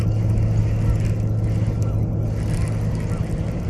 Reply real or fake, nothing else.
real